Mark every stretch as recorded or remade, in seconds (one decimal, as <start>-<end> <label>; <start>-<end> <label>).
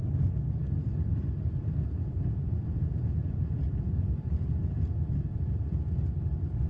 0.0-2.0 recorded; 2.0-6.0 remade; 6.0-6.7 recorded